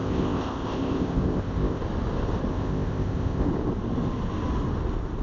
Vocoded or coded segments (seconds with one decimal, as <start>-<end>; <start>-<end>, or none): 0.0-1.8; 2.5-3.5